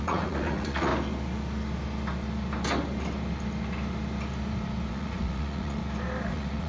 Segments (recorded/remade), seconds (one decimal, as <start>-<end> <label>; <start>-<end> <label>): 0.0-0.9 remade; 0.9-4.9 recorded; 4.9-5.8 remade; 5.8-6.3 recorded; 6.3-6.7 remade